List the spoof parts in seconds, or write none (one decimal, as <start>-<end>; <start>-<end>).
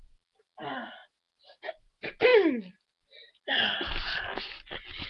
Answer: none